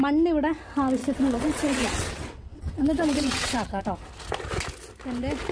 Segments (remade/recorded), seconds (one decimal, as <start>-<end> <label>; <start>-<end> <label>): 0.0-1.0 recorded; 1.0-3.8 remade; 3.8-5.5 recorded